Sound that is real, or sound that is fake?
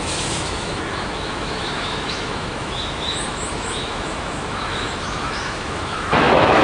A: fake